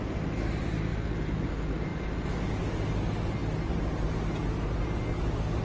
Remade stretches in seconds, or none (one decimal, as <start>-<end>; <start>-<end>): none